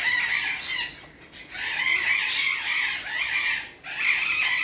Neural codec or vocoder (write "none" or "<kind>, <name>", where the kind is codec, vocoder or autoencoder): none